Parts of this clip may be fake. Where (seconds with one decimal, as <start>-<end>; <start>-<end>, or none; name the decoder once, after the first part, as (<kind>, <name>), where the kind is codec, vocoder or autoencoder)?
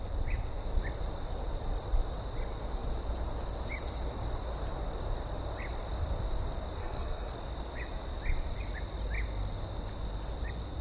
6.8-7.3 (codec, SNAC)